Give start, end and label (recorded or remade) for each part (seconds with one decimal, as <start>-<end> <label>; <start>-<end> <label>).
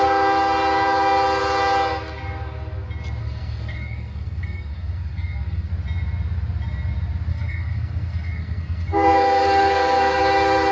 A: 0.0-3.2 recorded; 3.2-5.7 remade; 5.7-7.3 recorded; 7.3-10.2 remade; 10.2-10.7 recorded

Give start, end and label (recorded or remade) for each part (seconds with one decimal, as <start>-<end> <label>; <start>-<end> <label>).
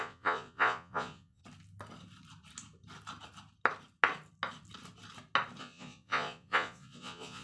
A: 0.0-1.4 remade; 1.4-5.6 recorded; 5.6-7.4 remade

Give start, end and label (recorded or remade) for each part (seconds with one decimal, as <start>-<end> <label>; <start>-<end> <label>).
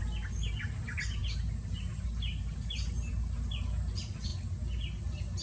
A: 0.0-5.4 recorded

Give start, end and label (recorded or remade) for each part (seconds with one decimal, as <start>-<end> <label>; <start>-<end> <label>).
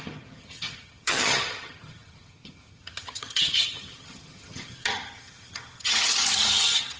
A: 0.0-7.0 remade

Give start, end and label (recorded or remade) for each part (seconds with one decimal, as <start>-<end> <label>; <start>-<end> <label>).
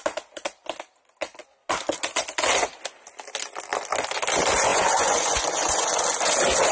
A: 0.0-4.7 recorded; 4.7-6.0 remade; 6.0-6.7 recorded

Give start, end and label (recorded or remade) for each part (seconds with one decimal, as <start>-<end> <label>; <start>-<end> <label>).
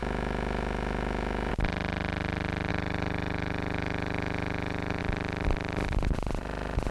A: 0.0-1.5 remade; 1.5-2.7 recorded; 2.7-5.0 remade; 5.0-6.9 recorded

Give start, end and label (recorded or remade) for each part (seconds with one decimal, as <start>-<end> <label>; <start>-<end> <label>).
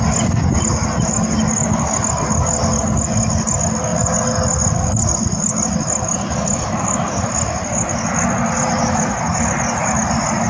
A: 0.0-10.5 recorded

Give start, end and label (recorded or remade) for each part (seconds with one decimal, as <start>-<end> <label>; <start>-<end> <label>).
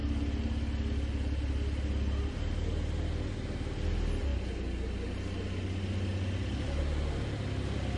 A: 0.0-8.0 recorded